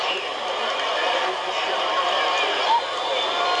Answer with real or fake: real